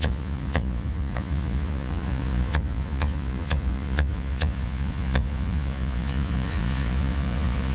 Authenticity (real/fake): fake